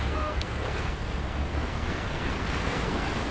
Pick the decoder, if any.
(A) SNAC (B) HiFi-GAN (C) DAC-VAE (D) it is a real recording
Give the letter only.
A